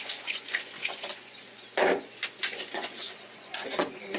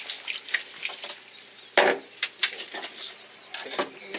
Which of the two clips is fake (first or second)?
first